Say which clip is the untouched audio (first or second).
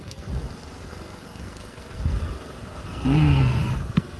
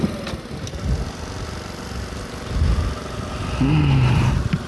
second